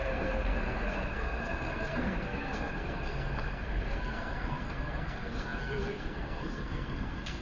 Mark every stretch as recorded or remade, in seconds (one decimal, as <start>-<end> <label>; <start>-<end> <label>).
0.0-7.4 remade